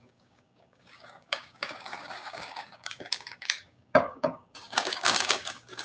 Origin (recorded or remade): remade